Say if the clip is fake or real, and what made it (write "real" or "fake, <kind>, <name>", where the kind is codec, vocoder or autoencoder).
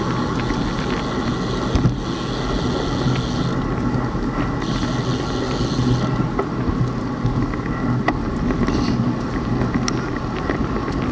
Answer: real